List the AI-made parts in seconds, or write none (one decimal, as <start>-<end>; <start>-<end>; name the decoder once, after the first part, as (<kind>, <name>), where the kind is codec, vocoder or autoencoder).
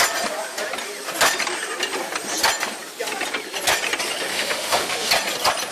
4.3-5.1 (autoencoder, DAC-VAE)